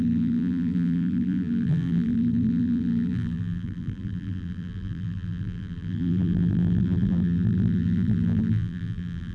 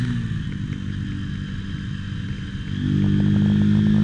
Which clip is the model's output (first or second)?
first